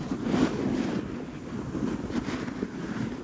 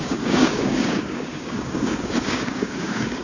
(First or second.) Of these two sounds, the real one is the first